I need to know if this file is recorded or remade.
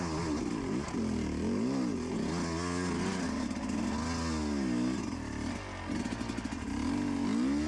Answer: recorded